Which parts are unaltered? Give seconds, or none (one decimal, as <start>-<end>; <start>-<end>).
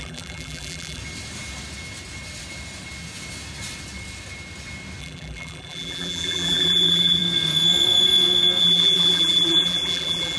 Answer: 1.0-5.0; 7.2-8.6